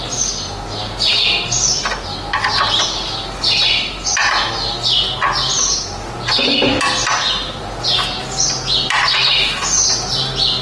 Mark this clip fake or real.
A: real